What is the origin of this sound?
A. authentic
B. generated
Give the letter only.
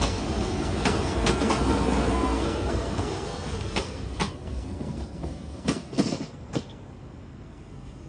B